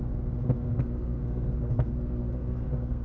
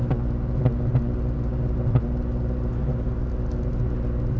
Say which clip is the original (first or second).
second